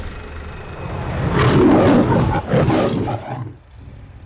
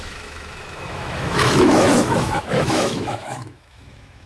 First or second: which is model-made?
second